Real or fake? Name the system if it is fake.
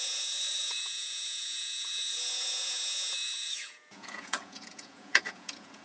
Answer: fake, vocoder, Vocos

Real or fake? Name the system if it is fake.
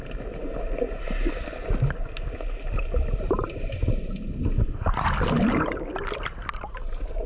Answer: real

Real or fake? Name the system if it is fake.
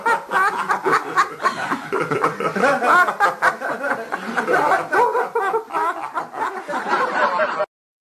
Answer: real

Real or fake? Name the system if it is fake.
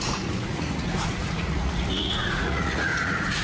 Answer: fake, vocoder, Vocos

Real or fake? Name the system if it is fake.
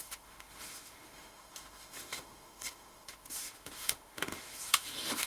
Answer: fake, autoencoder, DAC-VAE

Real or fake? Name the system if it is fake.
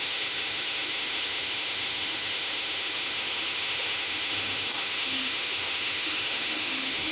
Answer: fake, autoencoder, DAC-VAE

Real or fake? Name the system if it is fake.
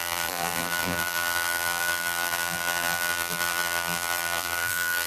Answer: fake, vocoder, BigVGAN v2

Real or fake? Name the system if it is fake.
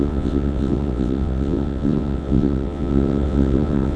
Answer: fake, vocoder, WaveNeXt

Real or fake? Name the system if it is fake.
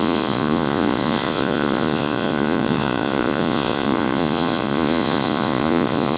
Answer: fake, vocoder, Vocos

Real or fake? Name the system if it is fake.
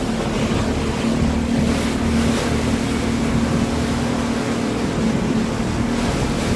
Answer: real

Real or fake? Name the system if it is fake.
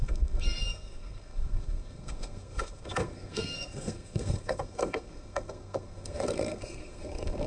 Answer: fake, codec, SNAC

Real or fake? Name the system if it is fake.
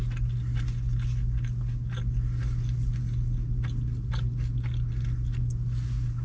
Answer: real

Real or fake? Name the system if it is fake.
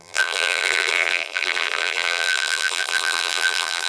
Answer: fake, vocoder, BigVGAN v2